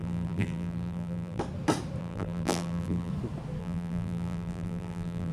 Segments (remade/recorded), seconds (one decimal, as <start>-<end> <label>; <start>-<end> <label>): 0.0-1.4 remade; 1.4-2.0 recorded; 2.0-3.1 remade; 3.1-3.6 recorded; 3.6-5.3 remade